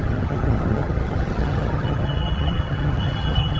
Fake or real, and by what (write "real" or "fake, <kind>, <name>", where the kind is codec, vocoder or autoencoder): fake, vocoder, HiFi-GAN